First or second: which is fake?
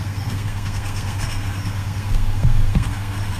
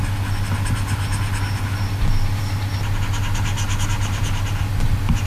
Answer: first